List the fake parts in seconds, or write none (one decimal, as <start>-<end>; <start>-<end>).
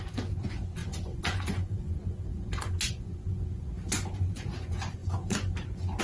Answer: 0.0-6.0